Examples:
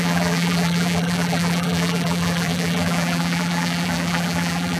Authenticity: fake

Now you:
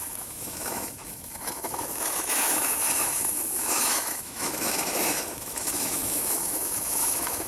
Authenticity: fake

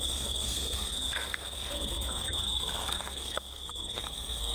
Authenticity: fake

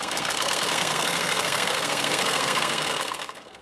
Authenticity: fake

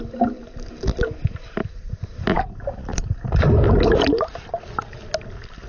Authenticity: real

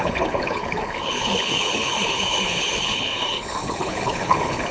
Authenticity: fake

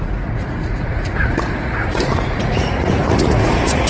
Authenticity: fake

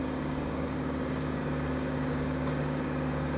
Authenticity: fake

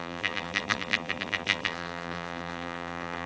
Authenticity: fake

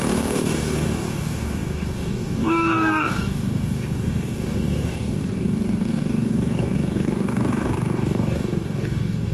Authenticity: fake